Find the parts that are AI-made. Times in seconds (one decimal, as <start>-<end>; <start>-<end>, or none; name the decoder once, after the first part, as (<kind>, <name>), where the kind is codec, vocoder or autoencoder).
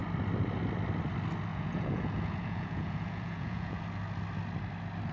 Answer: 1.5-3.8 (vocoder, Vocos)